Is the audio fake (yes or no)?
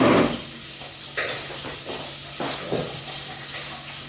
no